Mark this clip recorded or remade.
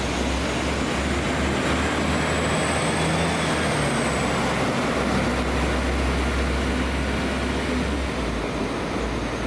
recorded